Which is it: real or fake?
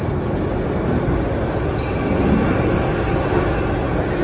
real